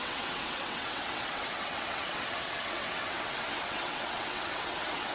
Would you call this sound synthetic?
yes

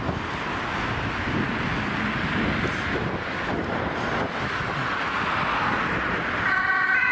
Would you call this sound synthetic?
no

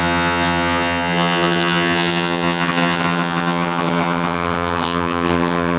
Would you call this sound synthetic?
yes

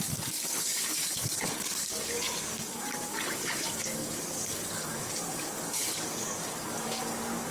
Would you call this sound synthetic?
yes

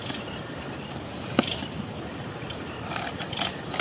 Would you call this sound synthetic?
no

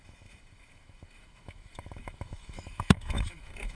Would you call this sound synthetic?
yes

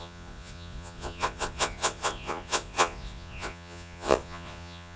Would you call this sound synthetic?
yes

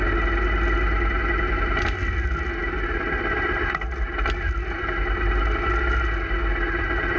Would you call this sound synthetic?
no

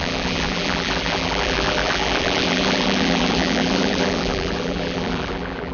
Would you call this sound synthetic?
yes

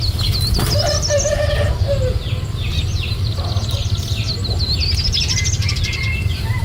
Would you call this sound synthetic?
no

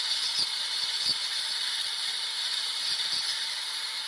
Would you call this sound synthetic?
yes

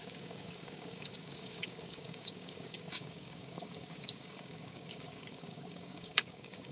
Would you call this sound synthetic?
yes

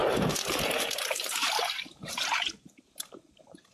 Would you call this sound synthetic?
yes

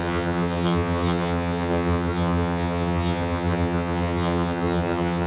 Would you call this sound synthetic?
yes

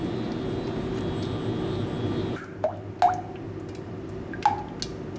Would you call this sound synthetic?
no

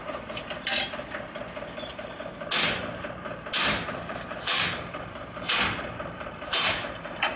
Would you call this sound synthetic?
yes